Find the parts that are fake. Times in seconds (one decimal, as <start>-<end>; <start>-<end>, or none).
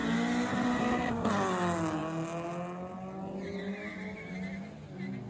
none